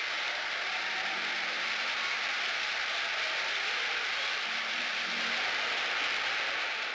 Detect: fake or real real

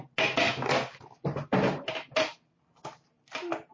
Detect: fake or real real